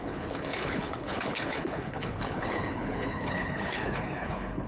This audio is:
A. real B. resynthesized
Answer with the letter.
B